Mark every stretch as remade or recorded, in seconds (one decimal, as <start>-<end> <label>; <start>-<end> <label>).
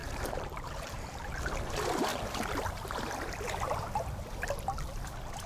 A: 0.0-1.7 remade; 1.7-2.1 recorded; 2.1-2.6 remade; 2.6-5.5 recorded